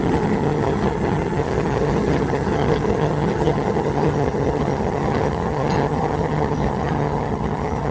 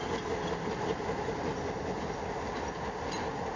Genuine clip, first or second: second